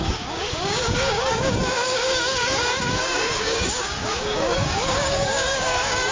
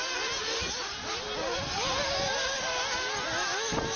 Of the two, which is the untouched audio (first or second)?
second